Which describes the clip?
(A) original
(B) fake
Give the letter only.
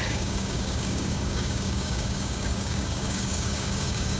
B